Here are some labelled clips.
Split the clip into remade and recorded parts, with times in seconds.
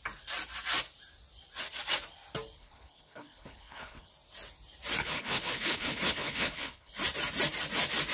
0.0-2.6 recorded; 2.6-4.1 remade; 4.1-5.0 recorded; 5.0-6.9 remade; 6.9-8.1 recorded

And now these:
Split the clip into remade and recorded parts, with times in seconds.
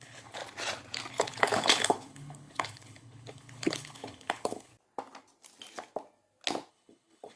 0.0-0.4 remade; 0.4-1.1 recorded; 1.1-4.7 remade; 4.7-6.7 recorded; 6.7-7.4 remade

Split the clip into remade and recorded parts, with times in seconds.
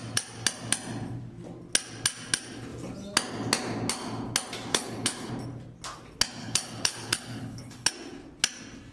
0.0-4.7 recorded; 4.7-5.3 remade; 5.3-6.4 recorded; 6.4-7.9 remade; 7.9-8.9 recorded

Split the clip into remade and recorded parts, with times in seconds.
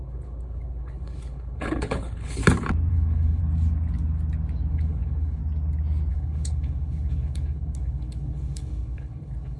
0.0-2.4 remade; 2.4-2.9 recorded; 2.9-3.4 remade; 3.4-4.7 recorded; 4.7-5.4 remade; 5.4-6.1 recorded; 6.1-9.6 remade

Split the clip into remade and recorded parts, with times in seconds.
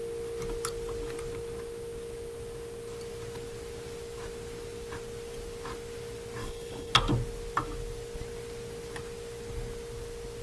0.0-6.4 recorded; 6.4-6.9 remade; 6.9-10.4 recorded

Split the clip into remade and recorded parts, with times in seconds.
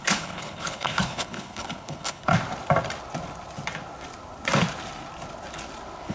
0.0-2.3 remade; 2.3-6.1 recorded